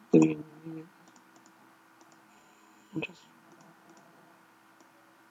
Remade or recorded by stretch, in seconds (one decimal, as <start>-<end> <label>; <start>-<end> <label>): 0.0-2.3 recorded; 2.3-3.3 remade; 3.3-5.3 recorded